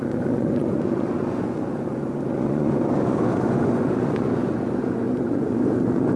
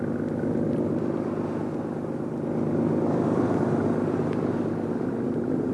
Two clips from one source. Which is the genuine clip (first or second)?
second